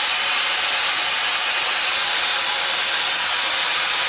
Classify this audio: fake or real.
real